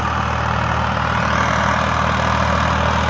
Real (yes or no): yes